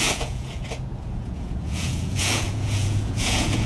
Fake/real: fake